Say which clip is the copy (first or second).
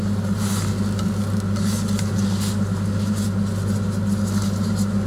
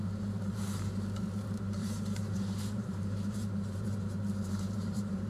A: second